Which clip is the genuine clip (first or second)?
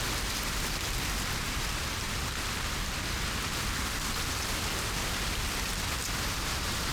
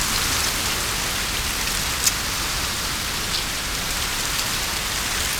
second